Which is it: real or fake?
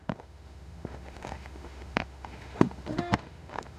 fake